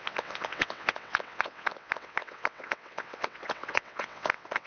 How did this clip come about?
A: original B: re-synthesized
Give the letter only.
B